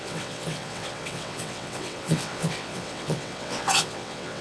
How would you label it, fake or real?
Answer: fake